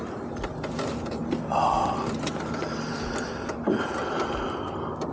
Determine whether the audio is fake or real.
fake